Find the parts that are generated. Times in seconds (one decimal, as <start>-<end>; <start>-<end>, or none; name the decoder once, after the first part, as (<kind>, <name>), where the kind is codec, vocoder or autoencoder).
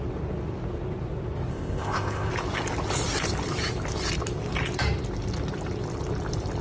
1.5-2.3 (codec, ZipCodec)